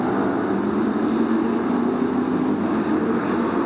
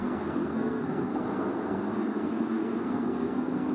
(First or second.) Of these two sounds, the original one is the first